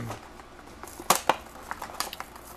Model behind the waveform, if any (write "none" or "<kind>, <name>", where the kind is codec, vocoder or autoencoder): none